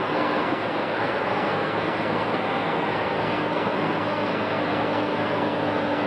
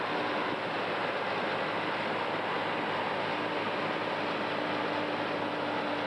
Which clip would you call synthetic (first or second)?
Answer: first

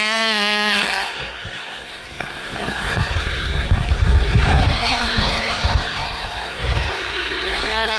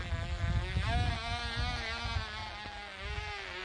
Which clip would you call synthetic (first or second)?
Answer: first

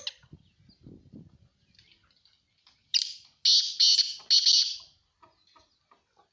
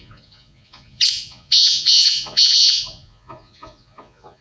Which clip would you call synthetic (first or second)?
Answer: second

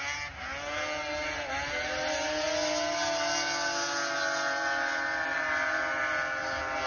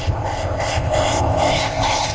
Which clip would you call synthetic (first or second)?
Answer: second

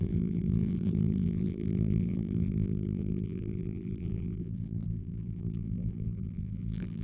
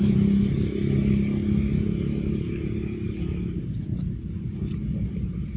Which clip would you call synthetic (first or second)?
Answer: first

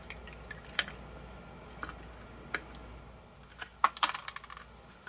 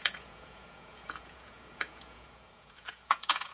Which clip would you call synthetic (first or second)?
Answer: second